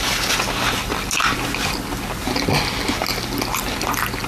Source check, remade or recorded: recorded